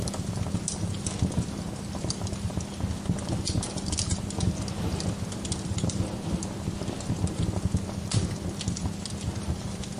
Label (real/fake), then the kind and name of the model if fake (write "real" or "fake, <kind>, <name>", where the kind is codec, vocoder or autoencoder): real